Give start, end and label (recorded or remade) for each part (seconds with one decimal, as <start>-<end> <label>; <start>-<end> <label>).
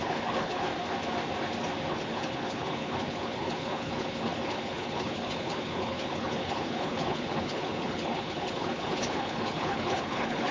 0.0-0.7 remade; 0.7-1.9 recorded; 1.9-10.5 remade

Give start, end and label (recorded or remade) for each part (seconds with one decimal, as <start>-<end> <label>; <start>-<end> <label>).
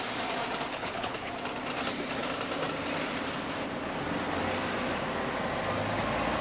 0.0-0.7 recorded; 0.7-1.3 remade; 1.3-6.4 recorded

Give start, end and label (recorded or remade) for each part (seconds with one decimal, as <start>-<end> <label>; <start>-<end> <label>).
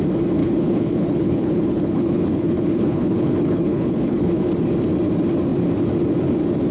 0.0-0.4 recorded; 0.4-4.4 remade; 4.4-6.7 recorded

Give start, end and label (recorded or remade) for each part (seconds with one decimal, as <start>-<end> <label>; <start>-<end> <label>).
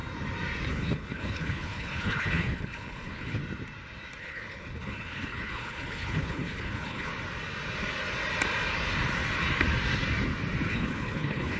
0.0-0.7 recorded; 0.7-3.4 remade; 3.4-4.2 recorded; 4.2-7.1 remade; 7.1-10.7 recorded; 10.7-11.6 remade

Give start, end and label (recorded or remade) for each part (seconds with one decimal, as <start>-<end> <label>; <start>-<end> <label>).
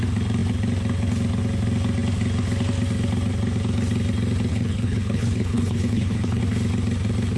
0.0-4.5 recorded; 4.5-6.4 remade; 6.4-7.4 recorded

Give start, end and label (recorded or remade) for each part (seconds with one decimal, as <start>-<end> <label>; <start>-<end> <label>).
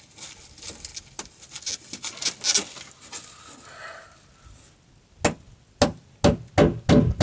0.0-7.2 recorded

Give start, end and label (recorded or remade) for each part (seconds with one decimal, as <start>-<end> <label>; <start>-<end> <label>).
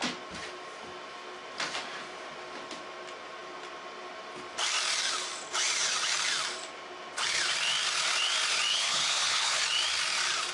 0.0-8.7 recorded; 8.7-9.6 remade; 9.6-10.5 recorded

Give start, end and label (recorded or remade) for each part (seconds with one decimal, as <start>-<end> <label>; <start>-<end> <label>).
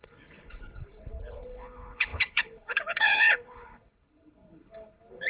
0.0-5.3 remade